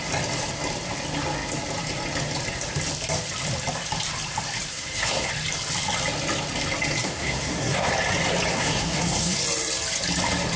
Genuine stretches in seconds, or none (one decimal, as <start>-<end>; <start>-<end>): 0.0-4.7; 5.3-7.0; 7.9-8.5; 9.4-10.6